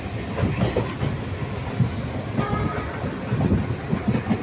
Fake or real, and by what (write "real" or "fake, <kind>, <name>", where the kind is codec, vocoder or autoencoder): real